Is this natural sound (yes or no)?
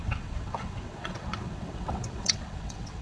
no